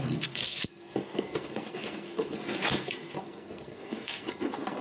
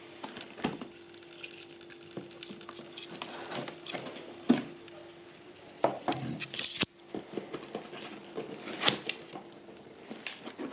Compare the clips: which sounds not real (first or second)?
first